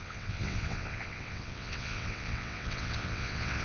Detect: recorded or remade remade